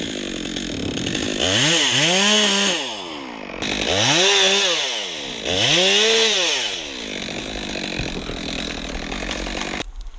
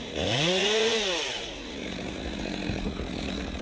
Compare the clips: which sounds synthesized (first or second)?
second